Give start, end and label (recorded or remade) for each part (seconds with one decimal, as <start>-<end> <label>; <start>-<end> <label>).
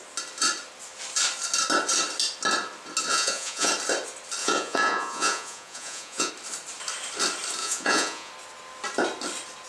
0.0-3.1 recorded; 3.1-3.7 remade; 3.7-4.4 recorded; 4.4-6.3 remade; 6.3-7.6 recorded; 7.6-8.3 remade; 8.3-9.7 recorded